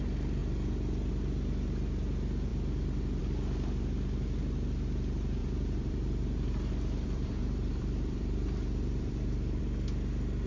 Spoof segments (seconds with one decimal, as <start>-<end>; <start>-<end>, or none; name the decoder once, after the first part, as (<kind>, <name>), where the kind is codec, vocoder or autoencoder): 5.4-9.6 (vocoder, BigVGAN v2)